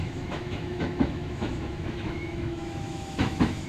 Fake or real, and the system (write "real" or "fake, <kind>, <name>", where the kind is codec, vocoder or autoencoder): fake, autoencoder, DAC-VAE